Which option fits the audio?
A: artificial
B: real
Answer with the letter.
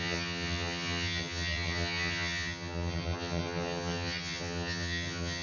A